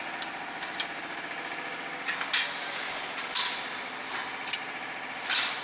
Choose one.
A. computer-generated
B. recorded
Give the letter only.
B